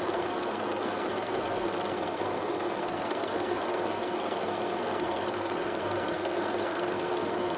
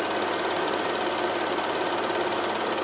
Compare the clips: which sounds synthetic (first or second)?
first